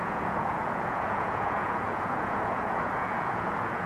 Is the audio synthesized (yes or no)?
yes